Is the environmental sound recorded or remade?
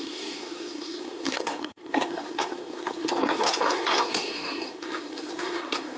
remade